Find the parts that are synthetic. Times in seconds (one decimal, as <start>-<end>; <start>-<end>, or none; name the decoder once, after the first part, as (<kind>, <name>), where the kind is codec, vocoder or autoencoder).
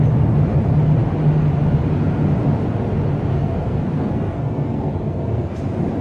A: 3.3-5.5 (codec, SNAC)